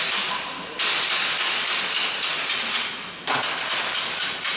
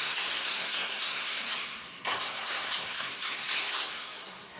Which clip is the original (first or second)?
first